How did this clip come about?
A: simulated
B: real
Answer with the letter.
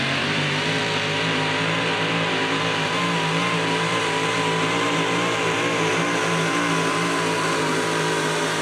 A